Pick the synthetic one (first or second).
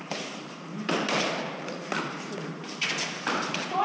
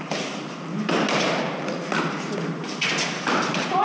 first